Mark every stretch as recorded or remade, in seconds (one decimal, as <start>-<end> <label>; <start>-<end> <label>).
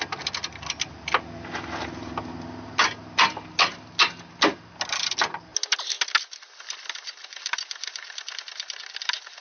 0.0-9.4 recorded